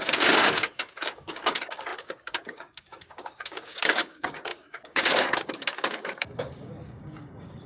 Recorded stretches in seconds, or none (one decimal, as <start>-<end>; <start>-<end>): none